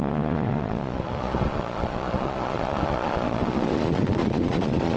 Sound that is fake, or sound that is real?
fake